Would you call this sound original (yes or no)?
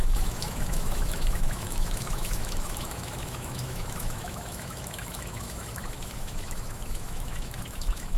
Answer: no